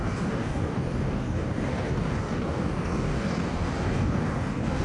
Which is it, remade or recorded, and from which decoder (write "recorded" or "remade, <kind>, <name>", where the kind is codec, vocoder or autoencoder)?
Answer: remade, codec, DAC